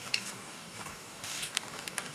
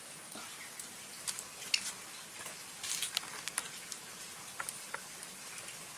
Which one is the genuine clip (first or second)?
second